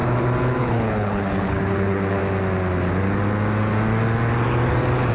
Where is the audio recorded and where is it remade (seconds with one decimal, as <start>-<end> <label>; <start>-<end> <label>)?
0.0-0.6 recorded; 0.6-2.2 remade; 2.2-5.1 recorded